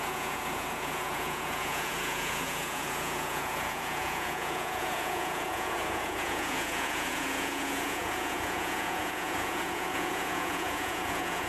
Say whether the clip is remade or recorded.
remade